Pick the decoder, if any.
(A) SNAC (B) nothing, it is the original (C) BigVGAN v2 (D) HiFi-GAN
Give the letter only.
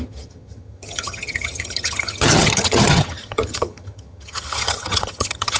D